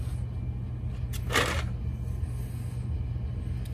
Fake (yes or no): no